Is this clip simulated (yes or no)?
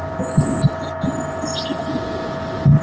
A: no